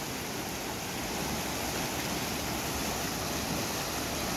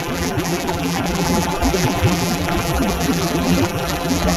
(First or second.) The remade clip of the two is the second